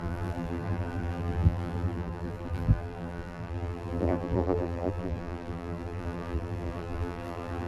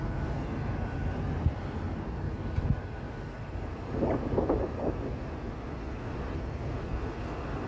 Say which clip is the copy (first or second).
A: first